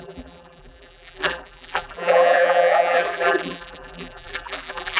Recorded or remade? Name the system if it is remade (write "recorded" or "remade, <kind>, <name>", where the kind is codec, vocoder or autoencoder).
remade, vocoder, BigVGAN v2